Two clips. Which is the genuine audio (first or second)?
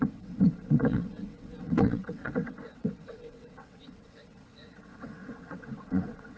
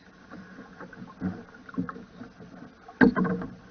second